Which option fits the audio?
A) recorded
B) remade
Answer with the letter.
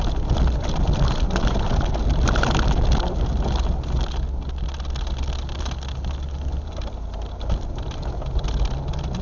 A